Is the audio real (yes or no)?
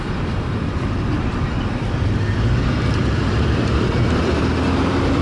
no